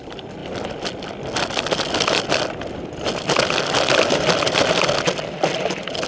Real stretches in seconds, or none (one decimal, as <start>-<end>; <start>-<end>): 0.0-6.1